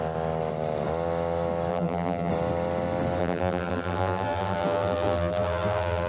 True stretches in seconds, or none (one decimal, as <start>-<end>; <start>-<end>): 0.0-1.7; 2.3-3.2